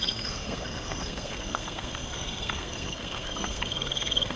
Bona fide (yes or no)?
no